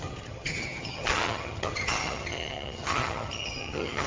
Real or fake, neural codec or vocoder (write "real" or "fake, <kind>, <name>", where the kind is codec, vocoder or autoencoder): fake, vocoder, HiFi-GAN